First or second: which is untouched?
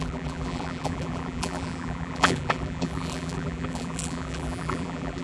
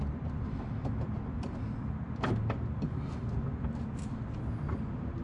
second